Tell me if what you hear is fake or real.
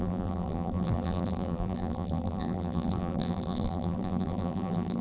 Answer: fake